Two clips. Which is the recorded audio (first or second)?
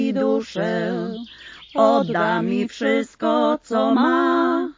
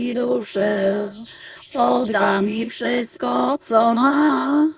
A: first